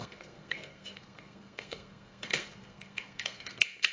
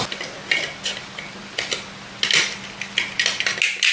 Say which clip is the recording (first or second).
second